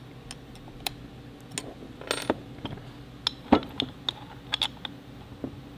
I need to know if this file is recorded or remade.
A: recorded